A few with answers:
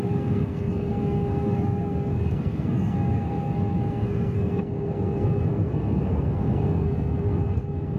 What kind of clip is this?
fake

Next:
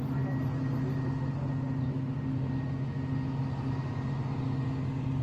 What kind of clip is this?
real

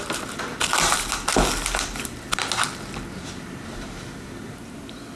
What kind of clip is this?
real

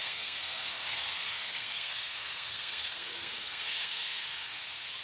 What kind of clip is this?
fake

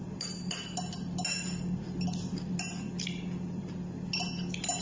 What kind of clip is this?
real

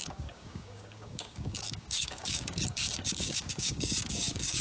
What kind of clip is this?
fake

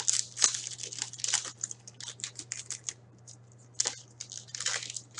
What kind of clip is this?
real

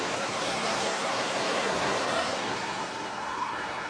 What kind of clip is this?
fake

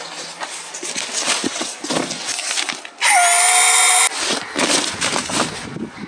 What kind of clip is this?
real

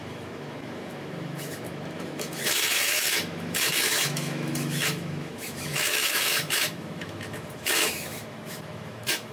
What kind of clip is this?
fake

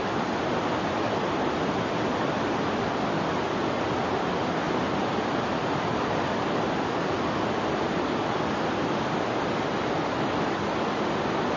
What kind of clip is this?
real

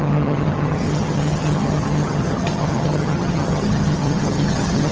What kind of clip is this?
fake